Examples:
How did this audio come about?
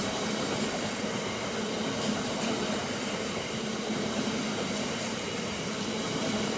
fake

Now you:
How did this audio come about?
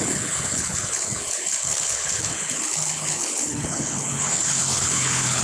fake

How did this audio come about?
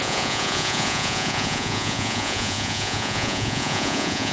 fake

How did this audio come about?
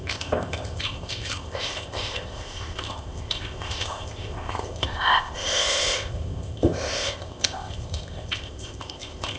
fake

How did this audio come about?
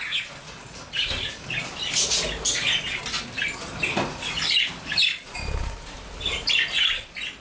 real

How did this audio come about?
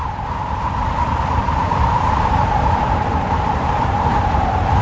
fake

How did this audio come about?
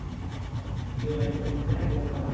real